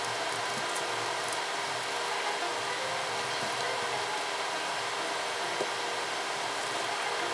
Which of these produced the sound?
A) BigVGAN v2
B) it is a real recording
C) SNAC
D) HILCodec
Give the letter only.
B